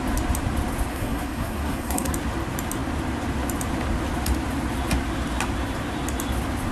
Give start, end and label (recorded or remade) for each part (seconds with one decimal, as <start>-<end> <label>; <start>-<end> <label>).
0.0-0.9 recorded; 0.9-2.1 remade; 2.1-6.7 recorded